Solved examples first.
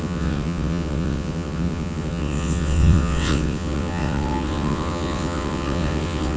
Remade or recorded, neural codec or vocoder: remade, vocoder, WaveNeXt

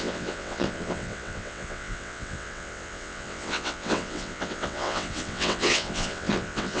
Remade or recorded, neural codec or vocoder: remade, vocoder, WaveNeXt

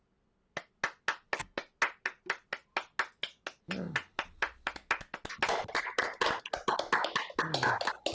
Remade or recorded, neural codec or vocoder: recorded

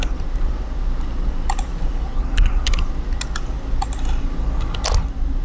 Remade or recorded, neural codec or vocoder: recorded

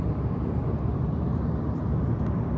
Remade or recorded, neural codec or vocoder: recorded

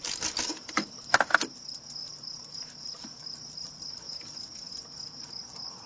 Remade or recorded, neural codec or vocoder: recorded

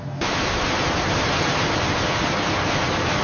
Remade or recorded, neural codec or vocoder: recorded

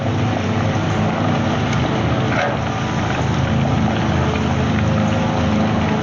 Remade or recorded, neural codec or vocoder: recorded